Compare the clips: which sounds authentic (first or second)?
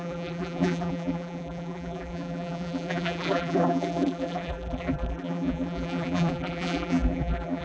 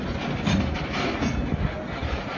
second